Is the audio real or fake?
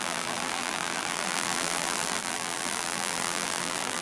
fake